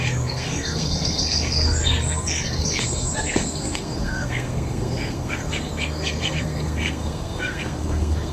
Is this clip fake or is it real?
fake